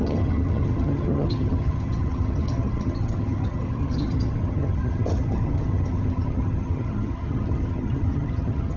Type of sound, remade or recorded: remade